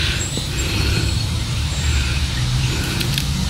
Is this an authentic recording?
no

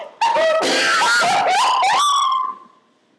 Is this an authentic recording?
yes